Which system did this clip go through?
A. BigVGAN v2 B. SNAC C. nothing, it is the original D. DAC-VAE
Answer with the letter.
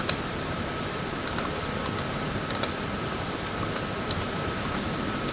A